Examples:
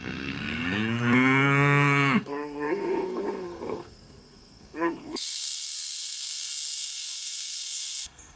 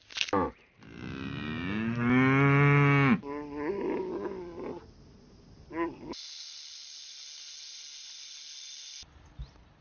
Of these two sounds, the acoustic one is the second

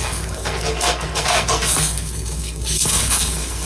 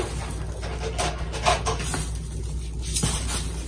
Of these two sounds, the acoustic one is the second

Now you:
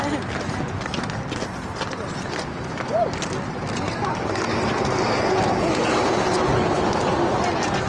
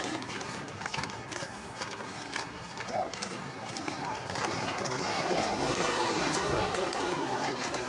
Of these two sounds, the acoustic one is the first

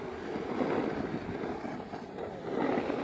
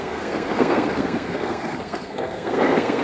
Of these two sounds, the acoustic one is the first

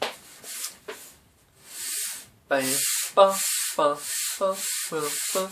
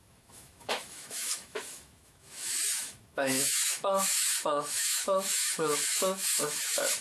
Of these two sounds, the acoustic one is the first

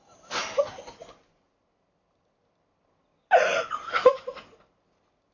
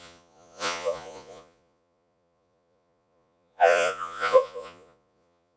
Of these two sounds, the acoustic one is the first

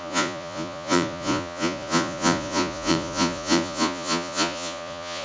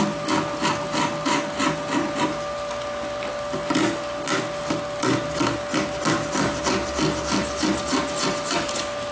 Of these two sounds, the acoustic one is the second